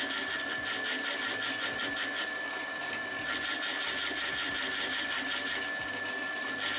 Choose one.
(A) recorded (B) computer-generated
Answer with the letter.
A